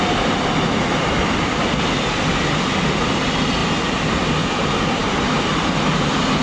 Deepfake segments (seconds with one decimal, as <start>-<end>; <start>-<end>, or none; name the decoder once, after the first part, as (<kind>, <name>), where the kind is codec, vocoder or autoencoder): none